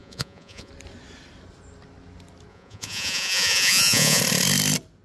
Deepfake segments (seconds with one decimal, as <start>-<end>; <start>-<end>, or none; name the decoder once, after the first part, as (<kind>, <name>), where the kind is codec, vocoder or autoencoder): 0.0-0.7 (vocoder, Vocos); 2.5-4.2

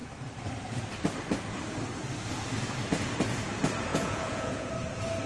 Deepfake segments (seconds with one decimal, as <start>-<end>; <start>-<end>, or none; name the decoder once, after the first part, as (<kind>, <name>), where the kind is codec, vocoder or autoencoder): 3.9-4.7 (vocoder, Vocos)

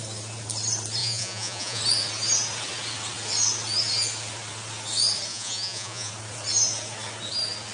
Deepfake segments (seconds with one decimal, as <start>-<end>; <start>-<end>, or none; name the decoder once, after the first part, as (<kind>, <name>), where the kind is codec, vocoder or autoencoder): 1.0-1.8 (vocoder, Vocos); 5.3-6.1

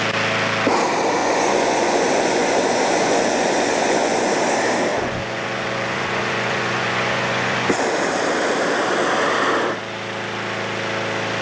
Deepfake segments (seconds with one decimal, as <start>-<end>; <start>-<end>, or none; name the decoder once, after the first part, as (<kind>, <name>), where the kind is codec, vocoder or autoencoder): 1.2-4.3 (vocoder, Vocos); 4.9-7.8

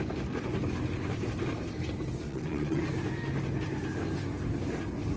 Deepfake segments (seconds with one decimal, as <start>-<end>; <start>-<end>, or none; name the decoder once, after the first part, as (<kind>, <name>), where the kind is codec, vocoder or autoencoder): 2.2-2.9 (vocoder, Vocos)

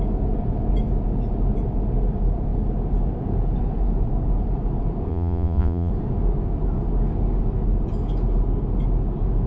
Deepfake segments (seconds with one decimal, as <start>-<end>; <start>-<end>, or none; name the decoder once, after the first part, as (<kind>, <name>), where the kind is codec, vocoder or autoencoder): 5.1-5.9 (vocoder, Vocos)

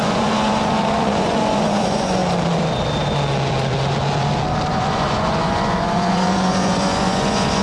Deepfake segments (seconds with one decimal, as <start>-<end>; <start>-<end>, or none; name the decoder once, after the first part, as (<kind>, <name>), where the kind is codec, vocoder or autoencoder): 0.0-2.2 (vocoder, Vocos); 4.7-7.6

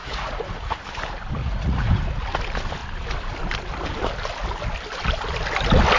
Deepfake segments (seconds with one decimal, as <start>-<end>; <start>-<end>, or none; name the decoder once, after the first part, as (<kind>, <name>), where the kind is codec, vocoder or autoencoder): 0.0-0.8 (vocoder, Vocos); 1.4-2.0